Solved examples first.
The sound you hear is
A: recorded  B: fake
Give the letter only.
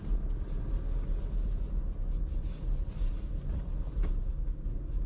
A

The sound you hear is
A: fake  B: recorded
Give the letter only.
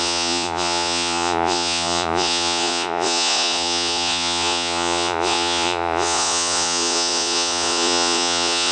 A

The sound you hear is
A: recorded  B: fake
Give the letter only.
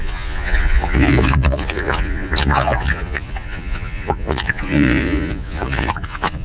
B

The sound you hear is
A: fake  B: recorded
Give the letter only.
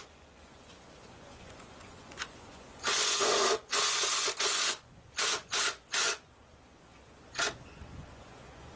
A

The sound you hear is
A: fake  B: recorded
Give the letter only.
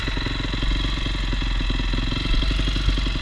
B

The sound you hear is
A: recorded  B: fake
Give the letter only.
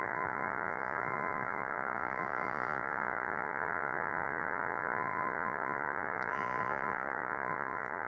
B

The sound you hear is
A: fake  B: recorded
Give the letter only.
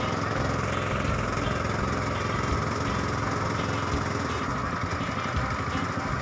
B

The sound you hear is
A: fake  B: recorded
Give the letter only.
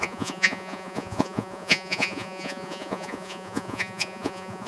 A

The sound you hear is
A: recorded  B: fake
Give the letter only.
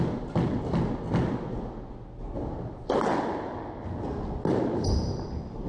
A